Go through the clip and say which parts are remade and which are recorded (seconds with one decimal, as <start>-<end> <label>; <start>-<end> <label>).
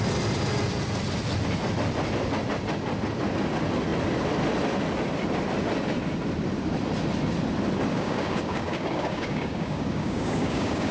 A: 0.0-7.9 recorded; 7.9-10.9 remade